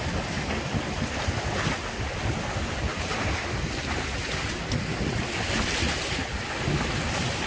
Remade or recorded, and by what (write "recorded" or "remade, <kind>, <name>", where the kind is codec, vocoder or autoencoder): recorded